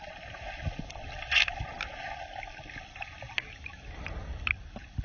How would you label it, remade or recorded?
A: recorded